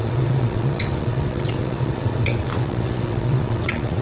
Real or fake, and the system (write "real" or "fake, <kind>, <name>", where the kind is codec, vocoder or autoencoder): fake, vocoder, WaveNeXt